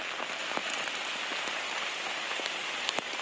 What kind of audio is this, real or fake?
real